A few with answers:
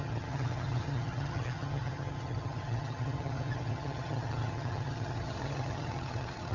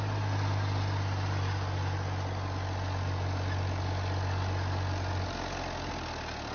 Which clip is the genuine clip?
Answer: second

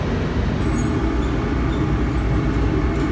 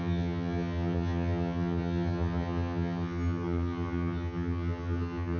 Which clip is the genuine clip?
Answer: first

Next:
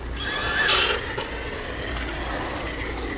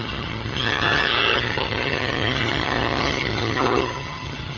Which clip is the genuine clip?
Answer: first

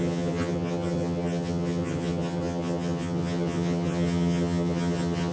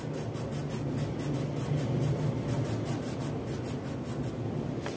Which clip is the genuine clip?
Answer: second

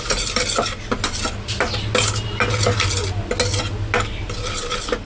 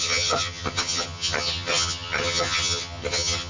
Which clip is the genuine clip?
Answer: first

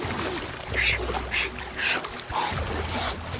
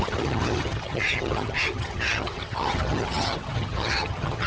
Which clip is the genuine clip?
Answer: first